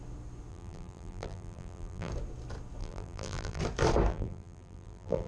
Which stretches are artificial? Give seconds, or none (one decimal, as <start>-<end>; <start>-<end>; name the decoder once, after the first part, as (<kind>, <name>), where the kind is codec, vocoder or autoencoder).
0.5-2.1 (vocoder, BigVGAN v2); 2.8-3.6; 4.1-5.3